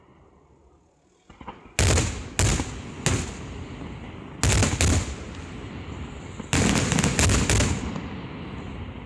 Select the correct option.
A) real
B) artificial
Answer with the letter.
A